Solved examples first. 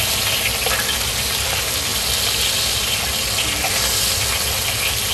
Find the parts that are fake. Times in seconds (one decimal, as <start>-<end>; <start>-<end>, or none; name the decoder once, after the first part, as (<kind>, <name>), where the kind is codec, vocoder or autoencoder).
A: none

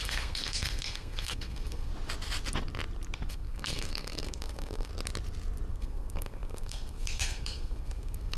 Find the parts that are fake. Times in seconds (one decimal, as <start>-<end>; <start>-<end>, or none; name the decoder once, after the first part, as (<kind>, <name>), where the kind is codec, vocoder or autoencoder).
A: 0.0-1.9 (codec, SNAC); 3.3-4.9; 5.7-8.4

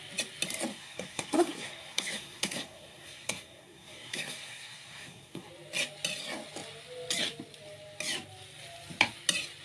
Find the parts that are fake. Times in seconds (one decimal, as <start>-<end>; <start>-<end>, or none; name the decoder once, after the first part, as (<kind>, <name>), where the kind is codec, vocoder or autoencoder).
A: 0.7-5.5 (codec, SNAC)

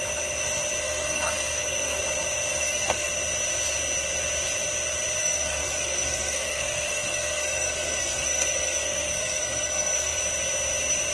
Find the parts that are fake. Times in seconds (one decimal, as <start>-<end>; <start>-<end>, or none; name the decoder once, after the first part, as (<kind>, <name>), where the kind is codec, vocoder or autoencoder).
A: 0.8-2.0 (codec, SNAC); 2.5-3.1; 5.2-10.2

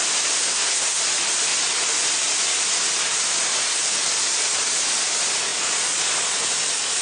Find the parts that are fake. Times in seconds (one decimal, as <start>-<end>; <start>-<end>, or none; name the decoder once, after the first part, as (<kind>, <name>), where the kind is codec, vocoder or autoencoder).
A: 0.4-1.0 (codec, SNAC)

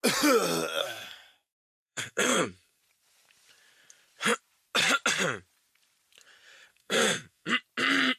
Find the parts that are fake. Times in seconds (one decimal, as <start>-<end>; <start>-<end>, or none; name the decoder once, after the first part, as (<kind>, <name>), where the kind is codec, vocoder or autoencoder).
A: 0.8-2.8 (codec, SNAC); 6.7-7.5

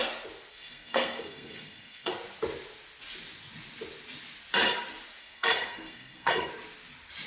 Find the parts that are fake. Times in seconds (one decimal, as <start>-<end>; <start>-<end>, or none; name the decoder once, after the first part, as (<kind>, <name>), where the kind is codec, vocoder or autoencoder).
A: 0.5-2.1 (codec, SNAC); 5.2-6.5